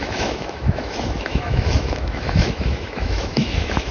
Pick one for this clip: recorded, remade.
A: remade